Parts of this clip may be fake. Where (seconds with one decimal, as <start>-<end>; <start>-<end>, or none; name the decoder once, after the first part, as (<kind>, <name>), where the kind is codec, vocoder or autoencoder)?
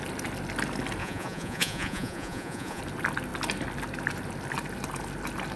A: 1.0-2.8 (vocoder, Vocos)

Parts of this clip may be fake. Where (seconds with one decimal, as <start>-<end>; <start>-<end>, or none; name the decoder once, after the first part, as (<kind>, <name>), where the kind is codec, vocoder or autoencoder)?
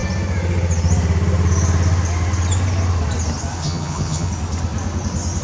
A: 3.6-4.3 (vocoder, HiFi-GAN)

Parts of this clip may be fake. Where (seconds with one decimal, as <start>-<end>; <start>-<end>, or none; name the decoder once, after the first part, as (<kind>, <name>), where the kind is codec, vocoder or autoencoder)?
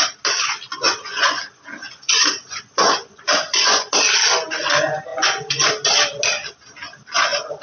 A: 0.7-1.4 (vocoder, Vocos); 1.8-3.9; 5.1-5.7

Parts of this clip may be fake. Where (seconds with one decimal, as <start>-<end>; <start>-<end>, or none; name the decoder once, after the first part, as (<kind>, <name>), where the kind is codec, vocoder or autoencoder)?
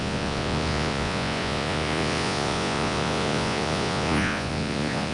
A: 0.0-5.1 (vocoder, Vocos)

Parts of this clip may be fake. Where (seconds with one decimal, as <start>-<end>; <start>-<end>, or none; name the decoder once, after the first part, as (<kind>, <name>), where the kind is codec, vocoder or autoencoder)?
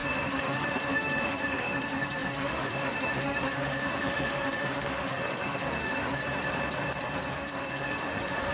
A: 0.0-6.2 (autoencoder, DAC-VAE); 7.3-8.5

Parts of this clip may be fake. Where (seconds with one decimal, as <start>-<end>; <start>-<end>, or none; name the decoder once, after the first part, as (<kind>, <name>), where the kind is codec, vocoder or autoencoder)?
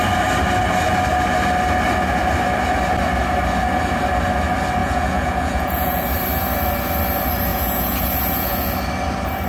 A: 4.8-6.0 (vocoder, Vocos); 7.5-8.7